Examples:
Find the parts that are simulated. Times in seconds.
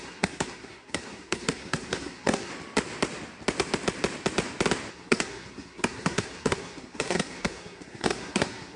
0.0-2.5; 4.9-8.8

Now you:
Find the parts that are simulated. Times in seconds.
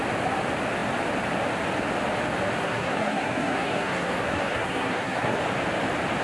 2.6-5.4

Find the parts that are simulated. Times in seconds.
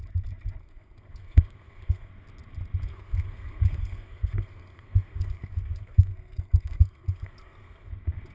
0.6-2.1; 2.9-7.9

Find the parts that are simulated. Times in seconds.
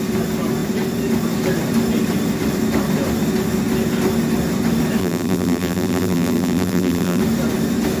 5.0-7.2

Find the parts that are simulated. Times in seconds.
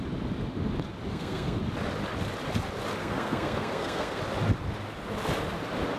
1.1-1.6; 3.0-4.2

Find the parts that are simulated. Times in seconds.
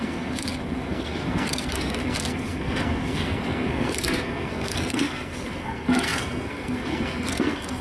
0.0-7.8